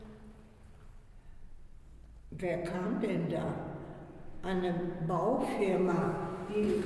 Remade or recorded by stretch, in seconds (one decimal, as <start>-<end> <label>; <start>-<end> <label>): 0.0-4.4 recorded; 4.4-6.5 remade; 6.5-6.9 recorded